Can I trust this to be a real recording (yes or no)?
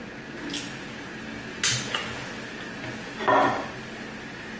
yes